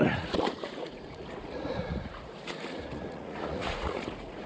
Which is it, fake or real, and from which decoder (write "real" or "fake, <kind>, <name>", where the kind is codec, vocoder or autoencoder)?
fake, vocoder, Vocos